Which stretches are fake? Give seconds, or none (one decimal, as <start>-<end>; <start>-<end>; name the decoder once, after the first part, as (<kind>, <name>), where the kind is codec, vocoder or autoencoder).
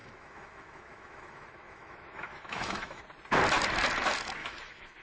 0.0-3.0 (autoencoder, DAC-VAE); 4.4-5.0